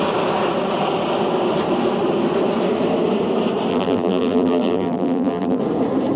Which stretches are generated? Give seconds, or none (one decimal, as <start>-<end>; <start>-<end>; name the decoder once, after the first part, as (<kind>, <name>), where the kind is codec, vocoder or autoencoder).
3.7-5.6 (vocoder, BigVGAN v2)